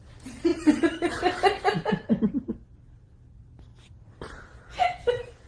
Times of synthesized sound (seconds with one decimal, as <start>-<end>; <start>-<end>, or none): none